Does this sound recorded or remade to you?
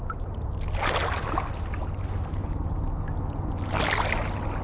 recorded